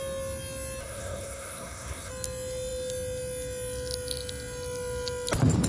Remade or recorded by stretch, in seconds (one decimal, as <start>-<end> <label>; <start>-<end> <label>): 0.0-0.8 recorded; 0.8-2.1 remade; 2.1-5.7 recorded